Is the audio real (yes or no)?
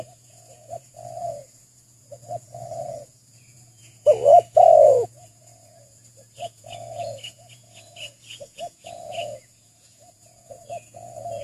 no